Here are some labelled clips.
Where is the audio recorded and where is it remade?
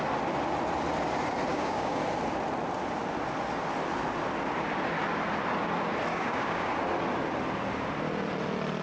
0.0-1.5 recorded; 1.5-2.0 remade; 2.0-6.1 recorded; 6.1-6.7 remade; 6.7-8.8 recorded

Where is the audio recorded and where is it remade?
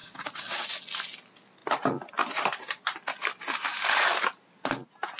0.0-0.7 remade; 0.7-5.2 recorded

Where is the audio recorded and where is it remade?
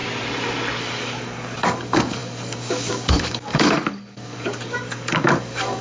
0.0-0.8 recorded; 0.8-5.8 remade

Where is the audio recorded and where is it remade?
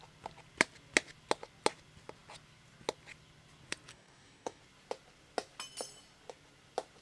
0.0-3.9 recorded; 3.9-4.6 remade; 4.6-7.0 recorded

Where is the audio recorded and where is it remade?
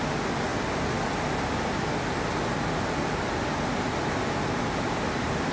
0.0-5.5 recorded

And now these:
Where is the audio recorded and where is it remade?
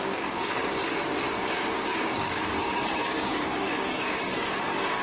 0.0-0.6 remade; 0.6-1.4 recorded; 1.4-5.0 remade